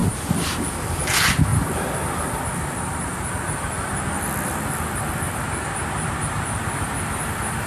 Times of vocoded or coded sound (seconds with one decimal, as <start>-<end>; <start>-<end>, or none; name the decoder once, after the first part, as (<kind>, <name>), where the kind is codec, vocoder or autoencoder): none